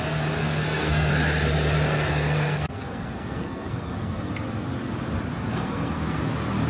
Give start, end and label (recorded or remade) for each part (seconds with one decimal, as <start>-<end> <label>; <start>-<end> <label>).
0.0-0.4 recorded; 0.4-1.1 remade; 1.1-1.9 recorded; 1.9-4.3 remade; 4.3-5.5 recorded; 5.5-6.2 remade; 6.2-6.7 recorded